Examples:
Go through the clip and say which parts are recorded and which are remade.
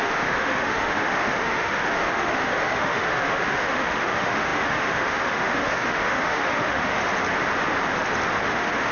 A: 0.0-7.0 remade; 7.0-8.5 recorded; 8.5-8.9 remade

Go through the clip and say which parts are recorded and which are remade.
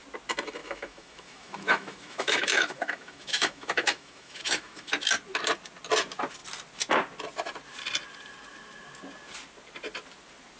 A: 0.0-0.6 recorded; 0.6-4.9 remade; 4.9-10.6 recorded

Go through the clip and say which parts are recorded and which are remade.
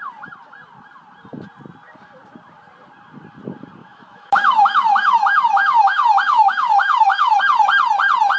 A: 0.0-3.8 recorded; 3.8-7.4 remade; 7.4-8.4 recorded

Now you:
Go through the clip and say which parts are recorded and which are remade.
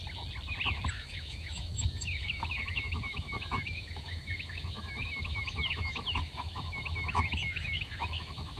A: 0.0-0.9 recorded; 0.9-8.6 remade